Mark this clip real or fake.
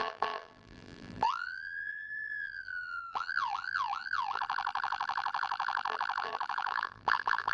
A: fake